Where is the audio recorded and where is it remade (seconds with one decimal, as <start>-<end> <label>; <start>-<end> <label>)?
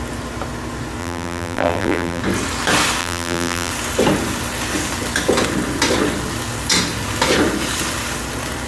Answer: 0.0-1.0 recorded; 1.0-2.2 remade; 2.2-3.0 recorded; 3.0-3.7 remade; 3.7-8.7 recorded